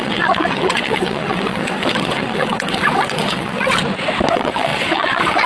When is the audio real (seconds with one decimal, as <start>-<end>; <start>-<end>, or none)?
3.8-4.3